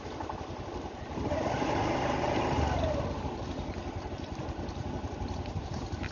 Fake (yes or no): no